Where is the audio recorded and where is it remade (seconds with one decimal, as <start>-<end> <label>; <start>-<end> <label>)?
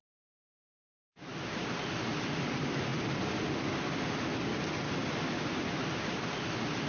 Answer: 0.0-6.9 recorded